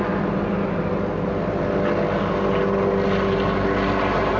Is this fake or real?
real